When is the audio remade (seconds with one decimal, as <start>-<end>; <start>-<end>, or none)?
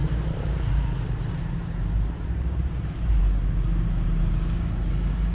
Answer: 0.0-3.2